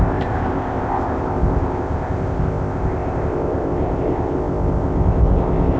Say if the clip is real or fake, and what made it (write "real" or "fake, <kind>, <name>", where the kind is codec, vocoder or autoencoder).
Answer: fake, codec, ZipCodec